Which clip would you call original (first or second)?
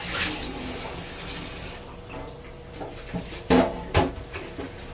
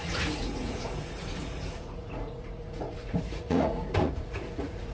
first